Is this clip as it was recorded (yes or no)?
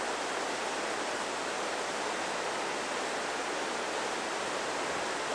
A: yes